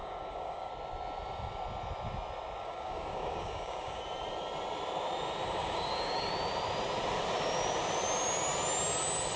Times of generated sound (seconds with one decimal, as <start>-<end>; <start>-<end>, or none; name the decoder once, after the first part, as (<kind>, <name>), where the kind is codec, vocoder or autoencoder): 0.0-0.7 (codec, DAC); 2.6-4.0; 5.6-6.3